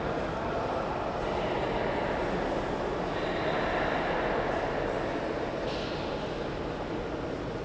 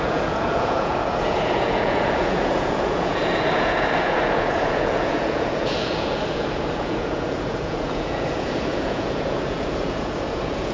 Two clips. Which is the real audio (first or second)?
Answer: first